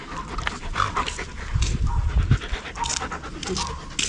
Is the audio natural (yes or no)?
yes